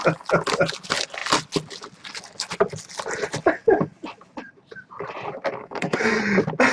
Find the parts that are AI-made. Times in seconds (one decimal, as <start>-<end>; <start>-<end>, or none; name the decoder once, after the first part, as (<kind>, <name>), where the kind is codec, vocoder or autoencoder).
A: 5.6-6.2 (codec, SNAC)